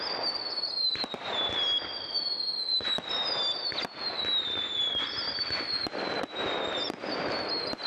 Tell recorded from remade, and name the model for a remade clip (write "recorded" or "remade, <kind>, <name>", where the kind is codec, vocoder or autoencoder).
recorded